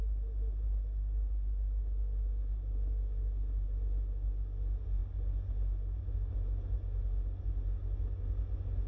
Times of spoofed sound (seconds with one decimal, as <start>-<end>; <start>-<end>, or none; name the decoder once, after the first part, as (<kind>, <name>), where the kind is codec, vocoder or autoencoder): none